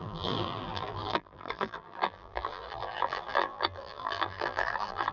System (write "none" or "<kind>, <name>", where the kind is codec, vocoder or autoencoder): vocoder, BigVGAN v2